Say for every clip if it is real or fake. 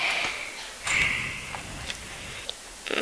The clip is real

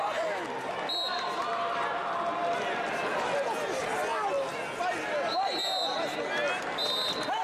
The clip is real